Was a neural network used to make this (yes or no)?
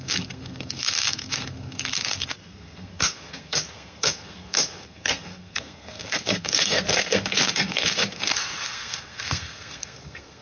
yes